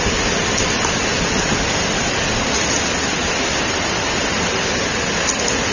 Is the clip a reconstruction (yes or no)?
no